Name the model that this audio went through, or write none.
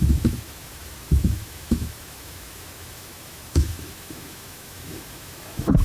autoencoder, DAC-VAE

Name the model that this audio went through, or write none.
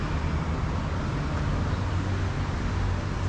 none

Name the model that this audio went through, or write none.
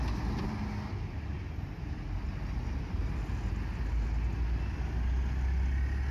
none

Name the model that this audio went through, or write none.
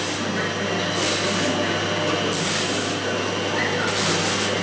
none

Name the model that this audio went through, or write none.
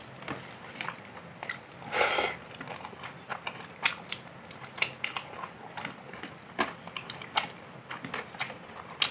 none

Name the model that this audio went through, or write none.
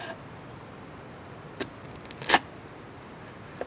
none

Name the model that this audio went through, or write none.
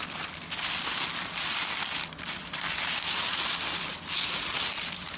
none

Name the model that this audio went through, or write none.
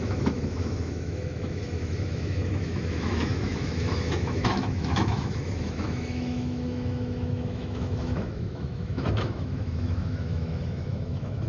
autoencoder, DAC-VAE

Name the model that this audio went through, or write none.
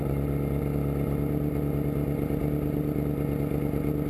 none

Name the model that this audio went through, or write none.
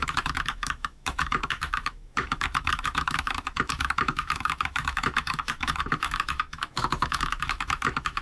autoencoder, DAC-VAE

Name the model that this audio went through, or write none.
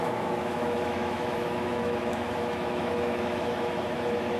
autoencoder, DAC-VAE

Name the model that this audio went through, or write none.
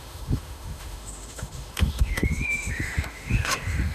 autoencoder, DAC-VAE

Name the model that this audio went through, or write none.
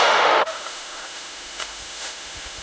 autoencoder, DAC-VAE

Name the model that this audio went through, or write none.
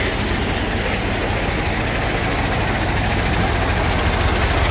none